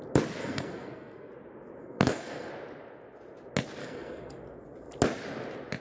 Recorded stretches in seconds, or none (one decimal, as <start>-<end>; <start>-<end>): 0.0-0.4; 1.3-1.8; 2.5-3.8; 4.4-5.8